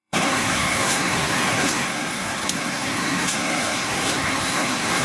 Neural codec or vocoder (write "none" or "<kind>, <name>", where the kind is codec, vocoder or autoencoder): codec, SNAC